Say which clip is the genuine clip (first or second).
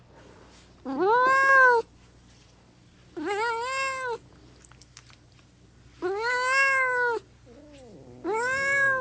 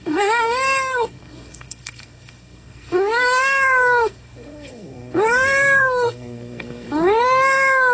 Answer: first